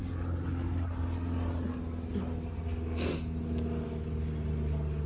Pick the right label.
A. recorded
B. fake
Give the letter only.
A